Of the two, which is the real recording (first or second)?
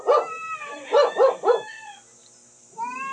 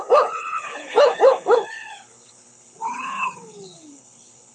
first